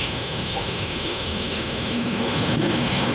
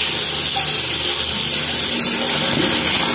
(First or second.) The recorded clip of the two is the second